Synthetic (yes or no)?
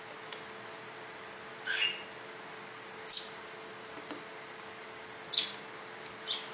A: no